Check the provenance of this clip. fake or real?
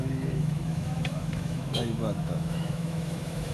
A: fake